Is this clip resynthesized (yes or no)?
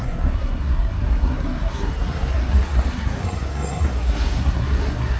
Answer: yes